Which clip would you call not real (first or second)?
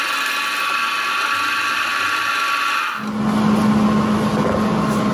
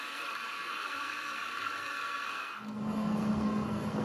second